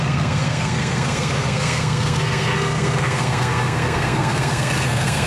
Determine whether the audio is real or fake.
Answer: fake